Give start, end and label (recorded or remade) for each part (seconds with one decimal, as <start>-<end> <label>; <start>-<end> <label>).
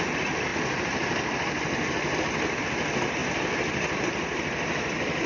0.0-3.2 recorded; 3.2-5.3 remade